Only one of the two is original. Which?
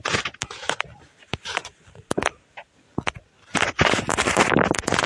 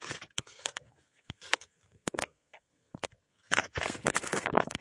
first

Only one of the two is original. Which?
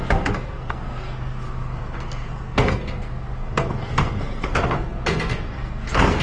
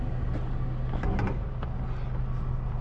second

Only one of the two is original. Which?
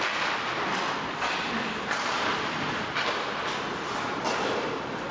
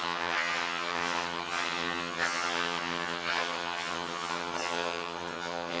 first